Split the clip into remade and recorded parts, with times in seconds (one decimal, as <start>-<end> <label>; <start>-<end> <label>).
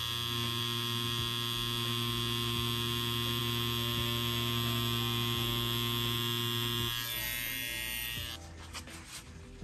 0.0-9.6 recorded